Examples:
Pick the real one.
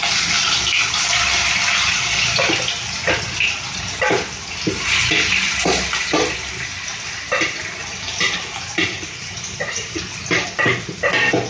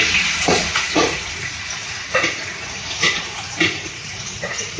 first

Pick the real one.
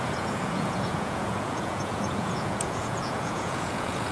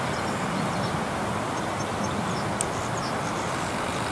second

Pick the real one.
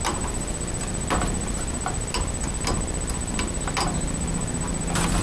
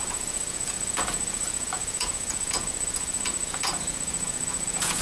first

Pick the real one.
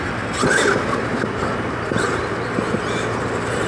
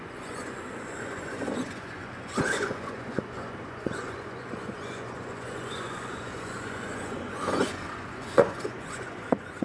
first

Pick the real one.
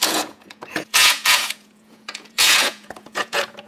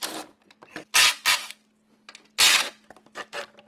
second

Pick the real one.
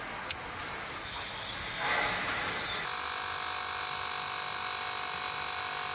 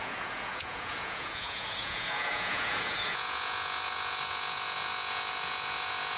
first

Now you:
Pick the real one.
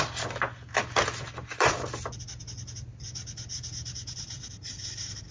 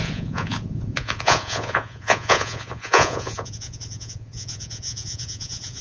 first